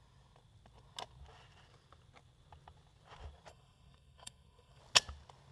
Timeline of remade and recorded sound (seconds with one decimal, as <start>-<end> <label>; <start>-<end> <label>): 0.0-3.5 recorded; 3.5-4.8 remade; 4.8-5.5 recorded